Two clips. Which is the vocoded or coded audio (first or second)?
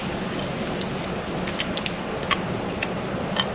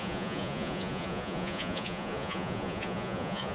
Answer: second